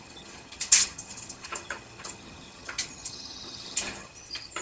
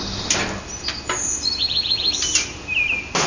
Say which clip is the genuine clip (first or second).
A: second